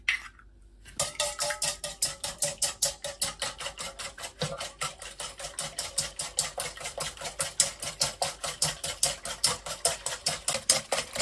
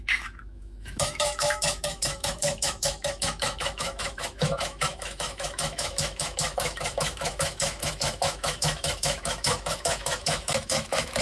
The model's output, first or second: second